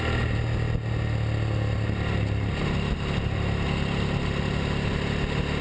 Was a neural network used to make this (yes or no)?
no